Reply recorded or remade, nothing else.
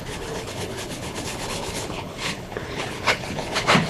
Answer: remade